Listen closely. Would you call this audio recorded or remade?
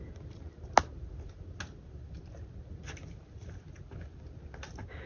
recorded